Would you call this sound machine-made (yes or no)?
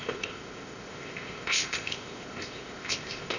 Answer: yes